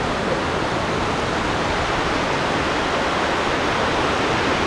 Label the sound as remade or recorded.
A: recorded